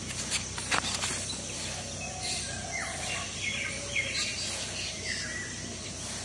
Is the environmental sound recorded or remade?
recorded